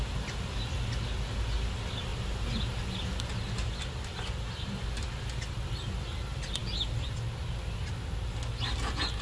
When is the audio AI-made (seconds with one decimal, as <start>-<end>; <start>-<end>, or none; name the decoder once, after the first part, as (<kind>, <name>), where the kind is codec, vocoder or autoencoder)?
none